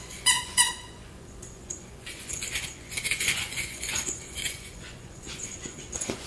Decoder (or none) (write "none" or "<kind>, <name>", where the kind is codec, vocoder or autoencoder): vocoder, Vocos